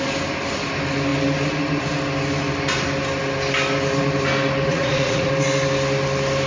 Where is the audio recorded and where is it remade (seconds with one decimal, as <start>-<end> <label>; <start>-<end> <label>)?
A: 0.0-4.7 recorded; 4.7-5.3 remade; 5.3-6.5 recorded